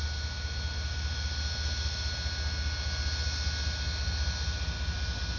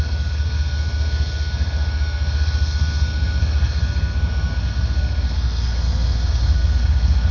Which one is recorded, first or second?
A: first